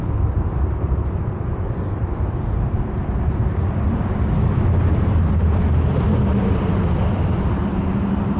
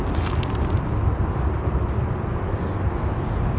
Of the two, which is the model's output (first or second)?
first